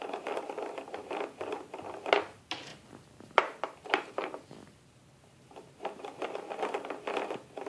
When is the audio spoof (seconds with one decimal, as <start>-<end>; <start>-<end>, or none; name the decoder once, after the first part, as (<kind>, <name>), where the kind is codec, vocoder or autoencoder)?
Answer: 2.7-5.8 (vocoder, BigVGAN v2)